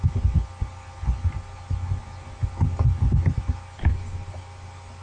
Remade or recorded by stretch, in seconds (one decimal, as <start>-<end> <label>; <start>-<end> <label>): 0.0-5.0 recorded